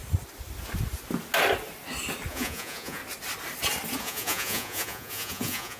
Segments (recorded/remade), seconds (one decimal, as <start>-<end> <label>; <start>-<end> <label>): 0.0-2.3 recorded; 2.3-3.0 remade; 3.0-4.0 recorded; 4.0-5.8 remade